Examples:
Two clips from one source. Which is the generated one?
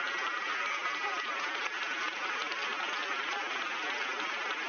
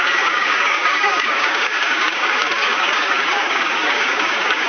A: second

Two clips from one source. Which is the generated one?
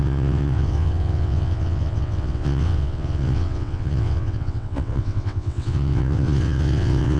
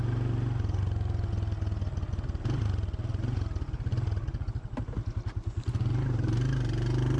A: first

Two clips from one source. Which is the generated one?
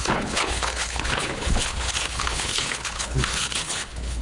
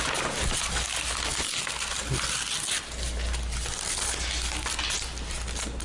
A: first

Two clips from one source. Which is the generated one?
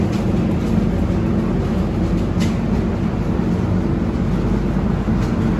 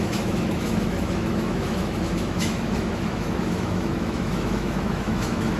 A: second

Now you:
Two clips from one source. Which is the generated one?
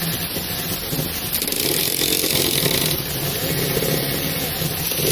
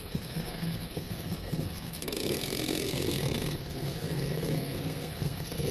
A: second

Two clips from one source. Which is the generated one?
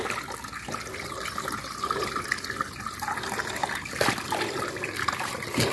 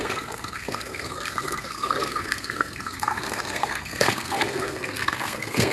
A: second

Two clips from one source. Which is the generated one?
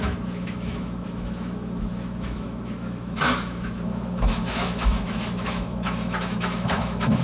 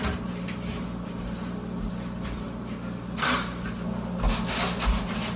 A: first